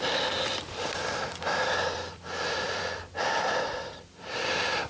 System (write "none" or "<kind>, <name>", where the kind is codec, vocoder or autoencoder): vocoder, BigVGAN v2